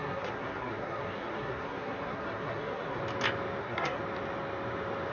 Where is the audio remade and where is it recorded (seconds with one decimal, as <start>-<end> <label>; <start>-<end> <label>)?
0.0-3.0 remade; 3.0-3.6 recorded; 3.6-4.0 remade; 4.0-5.1 recorded